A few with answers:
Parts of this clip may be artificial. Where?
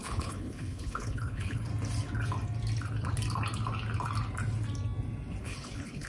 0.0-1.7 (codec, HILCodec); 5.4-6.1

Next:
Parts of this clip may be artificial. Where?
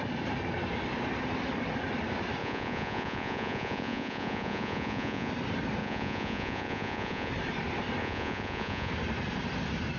2.4-5.3 (vocoder, Vocos); 5.8-7.3; 8.0-8.9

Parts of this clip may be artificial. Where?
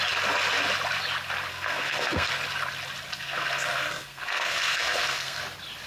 1.5-2.3 (codec, SNAC); 3.1-5.4